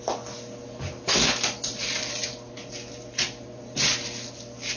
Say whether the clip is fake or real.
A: real